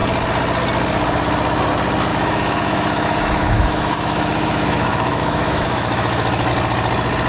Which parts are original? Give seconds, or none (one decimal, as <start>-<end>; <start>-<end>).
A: 0.0-2.1; 6.5-7.3